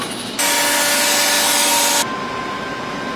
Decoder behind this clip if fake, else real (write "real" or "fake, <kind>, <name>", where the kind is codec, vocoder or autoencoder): real